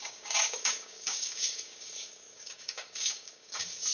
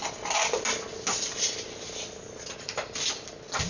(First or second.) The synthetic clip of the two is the first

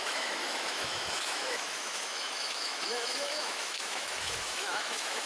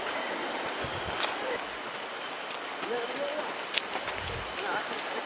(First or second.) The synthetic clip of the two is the first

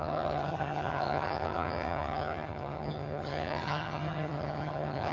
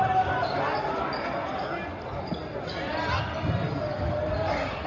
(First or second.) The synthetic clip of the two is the first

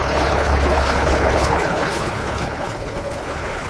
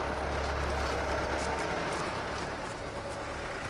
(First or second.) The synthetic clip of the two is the first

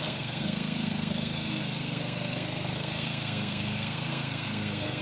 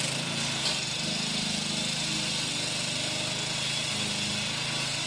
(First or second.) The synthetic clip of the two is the first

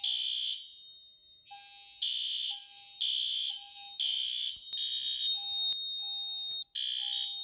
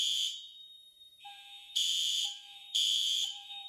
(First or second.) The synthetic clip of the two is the second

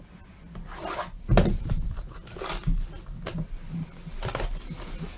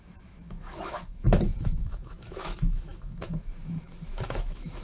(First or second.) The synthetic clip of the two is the second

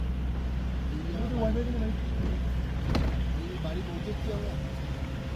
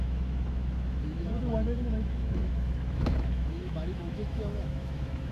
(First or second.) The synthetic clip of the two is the second